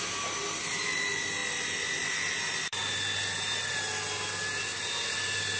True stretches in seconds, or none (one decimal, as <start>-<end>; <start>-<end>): 0.0-5.6